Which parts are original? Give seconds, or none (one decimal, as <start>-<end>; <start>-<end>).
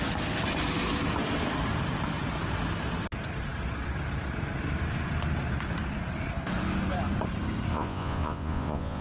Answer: 0.0-7.7